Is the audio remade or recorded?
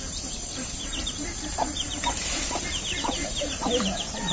remade